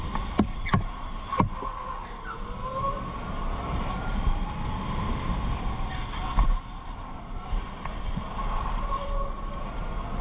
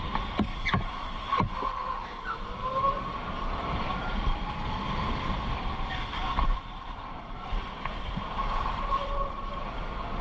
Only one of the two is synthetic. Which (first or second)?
second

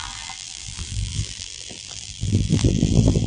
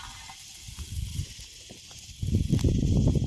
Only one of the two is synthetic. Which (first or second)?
first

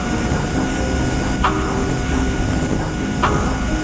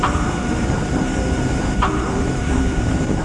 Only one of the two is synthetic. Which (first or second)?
second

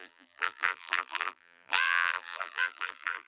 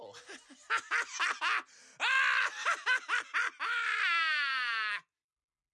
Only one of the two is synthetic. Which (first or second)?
first